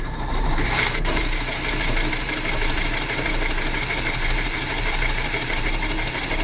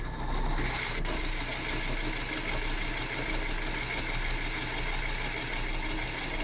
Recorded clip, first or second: second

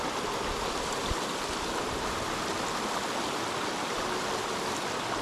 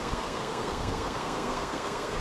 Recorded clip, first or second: first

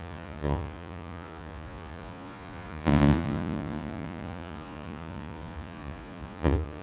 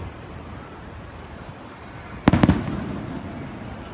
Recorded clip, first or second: second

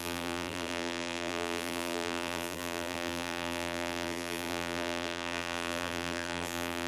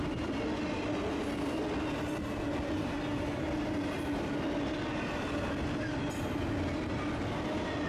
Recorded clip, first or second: second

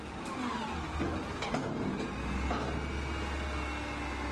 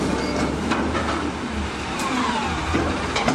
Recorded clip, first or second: first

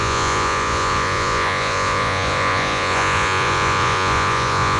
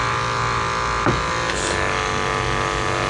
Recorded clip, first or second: second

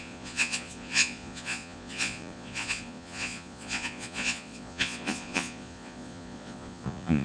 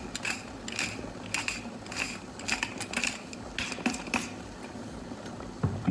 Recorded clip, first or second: second